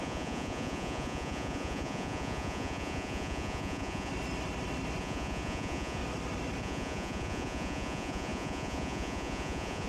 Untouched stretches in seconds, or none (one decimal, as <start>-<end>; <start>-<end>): 4.1-5.0; 6.0-6.6